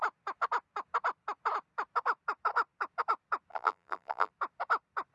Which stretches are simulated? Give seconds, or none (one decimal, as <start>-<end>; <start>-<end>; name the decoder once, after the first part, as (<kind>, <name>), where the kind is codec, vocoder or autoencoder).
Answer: 3.5-4.3 (vocoder, BigVGAN v2)